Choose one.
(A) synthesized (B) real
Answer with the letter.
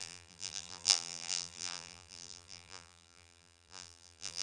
A